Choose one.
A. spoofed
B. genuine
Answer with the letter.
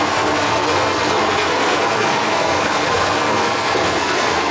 A